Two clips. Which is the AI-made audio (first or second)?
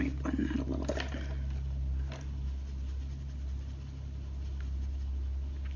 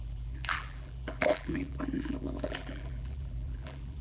second